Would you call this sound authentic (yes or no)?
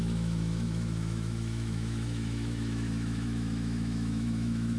no